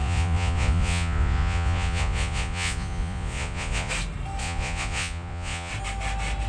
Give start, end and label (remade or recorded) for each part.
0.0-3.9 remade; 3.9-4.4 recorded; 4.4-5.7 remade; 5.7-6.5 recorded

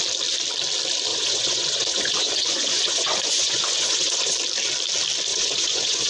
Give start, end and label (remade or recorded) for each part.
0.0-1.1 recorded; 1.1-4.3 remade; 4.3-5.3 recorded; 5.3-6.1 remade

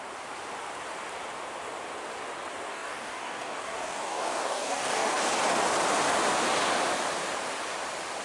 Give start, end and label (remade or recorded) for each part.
0.0-2.7 recorded; 2.7-5.2 remade; 5.2-8.2 recorded

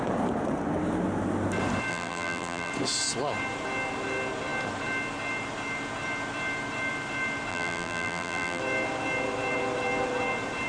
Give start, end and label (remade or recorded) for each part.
0.0-1.9 recorded; 1.9-2.7 remade; 2.7-7.5 recorded; 7.5-8.6 remade; 8.6-10.7 recorded

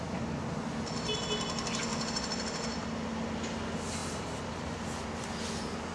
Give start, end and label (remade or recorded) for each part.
0.0-1.9 recorded; 1.9-3.2 remade; 3.2-4.0 recorded; 4.0-4.8 remade; 4.8-5.9 recorded

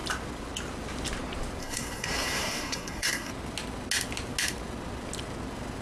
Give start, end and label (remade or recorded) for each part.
0.0-1.6 recorded; 1.6-3.3 remade; 3.3-5.8 recorded

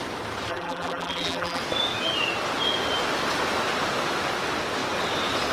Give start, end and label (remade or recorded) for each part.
0.0-0.5 recorded; 0.5-1.6 remade; 1.6-5.5 recorded